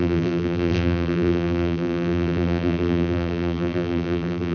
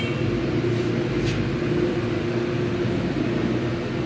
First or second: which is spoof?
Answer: first